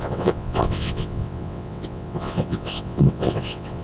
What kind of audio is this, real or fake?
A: fake